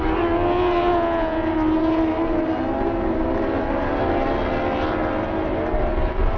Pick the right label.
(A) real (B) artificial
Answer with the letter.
A